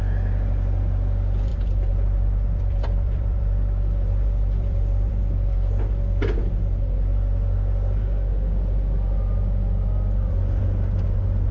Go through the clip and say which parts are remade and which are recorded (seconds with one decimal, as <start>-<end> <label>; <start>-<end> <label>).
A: 0.0-1.5 recorded; 1.5-5.2 remade; 5.2-11.5 recorded